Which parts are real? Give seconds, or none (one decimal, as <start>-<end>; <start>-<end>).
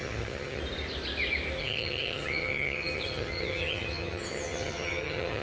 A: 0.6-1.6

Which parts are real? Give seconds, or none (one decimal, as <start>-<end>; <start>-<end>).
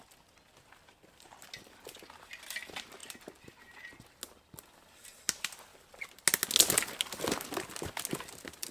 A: 0.0-8.7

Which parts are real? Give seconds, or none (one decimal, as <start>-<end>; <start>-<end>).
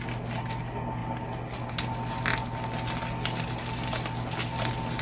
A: 0.0-5.0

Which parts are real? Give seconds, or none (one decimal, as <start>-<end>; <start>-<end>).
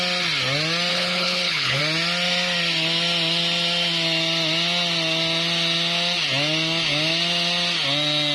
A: 0.0-0.9; 1.8-8.3